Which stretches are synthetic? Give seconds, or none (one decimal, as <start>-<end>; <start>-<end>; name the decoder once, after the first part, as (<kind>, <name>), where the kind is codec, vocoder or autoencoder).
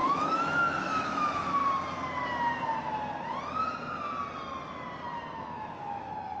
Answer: 0.0-1.6 (autoencoder, DAC-VAE); 5.4-6.4